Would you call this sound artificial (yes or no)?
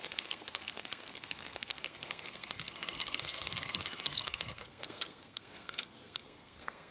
yes